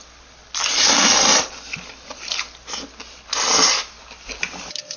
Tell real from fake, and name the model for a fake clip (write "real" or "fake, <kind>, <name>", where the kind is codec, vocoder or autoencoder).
real